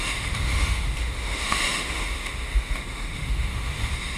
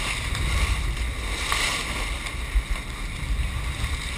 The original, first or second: second